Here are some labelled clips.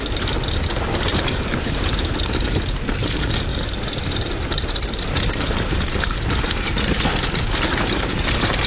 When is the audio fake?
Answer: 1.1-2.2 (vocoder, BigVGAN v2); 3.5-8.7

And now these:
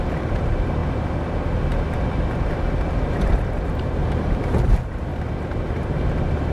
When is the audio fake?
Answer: 0.0-0.8 (vocoder, BigVGAN v2); 3.0-5.1; 5.8-6.5

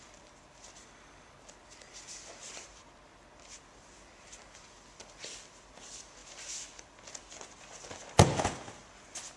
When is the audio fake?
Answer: none